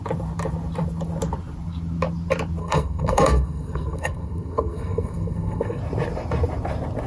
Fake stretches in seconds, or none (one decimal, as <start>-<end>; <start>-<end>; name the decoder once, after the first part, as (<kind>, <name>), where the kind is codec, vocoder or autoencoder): 2.6-5.8 (codec, SNAC)